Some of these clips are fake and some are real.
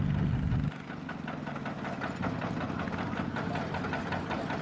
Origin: real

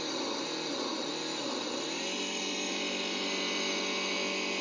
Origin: real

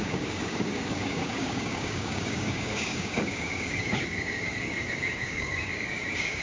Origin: fake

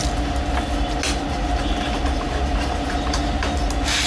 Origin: real